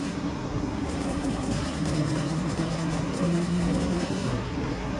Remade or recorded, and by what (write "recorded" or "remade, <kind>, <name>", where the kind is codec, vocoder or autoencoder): remade, codec, SNAC